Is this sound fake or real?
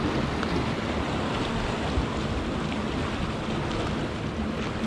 real